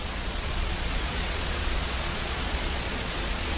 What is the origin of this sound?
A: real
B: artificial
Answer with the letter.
B